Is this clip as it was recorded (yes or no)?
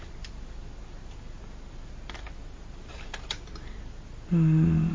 yes